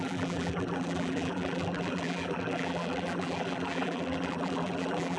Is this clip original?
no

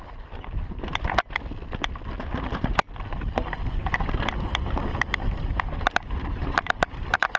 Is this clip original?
no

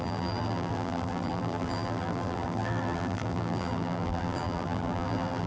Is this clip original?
no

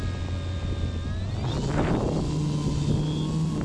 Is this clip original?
yes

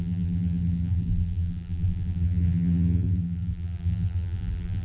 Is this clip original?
no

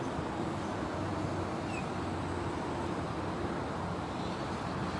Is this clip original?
yes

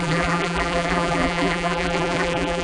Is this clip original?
no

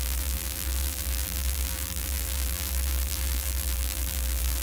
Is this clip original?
no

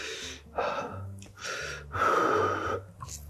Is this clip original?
yes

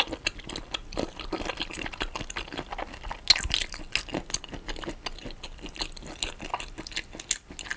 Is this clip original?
yes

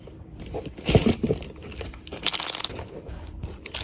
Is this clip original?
no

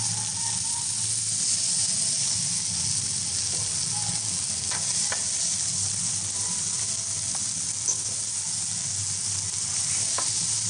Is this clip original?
yes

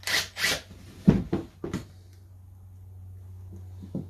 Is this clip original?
yes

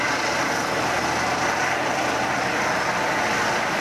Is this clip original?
no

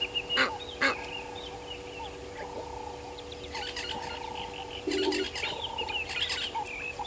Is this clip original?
yes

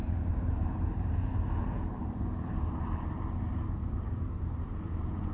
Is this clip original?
no